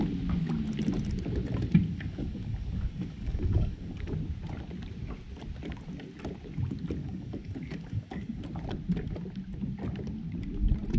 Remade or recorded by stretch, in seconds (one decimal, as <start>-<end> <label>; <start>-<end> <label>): 0.0-1.9 recorded; 1.9-4.1 remade; 4.1-7.0 recorded; 7.0-8.4 remade; 8.4-11.0 recorded